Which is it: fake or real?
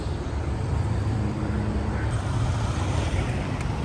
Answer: fake